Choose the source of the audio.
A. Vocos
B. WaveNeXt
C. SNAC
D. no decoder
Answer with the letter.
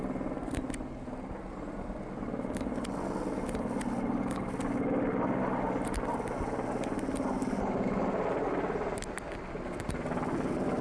D